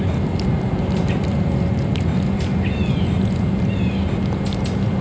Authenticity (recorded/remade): recorded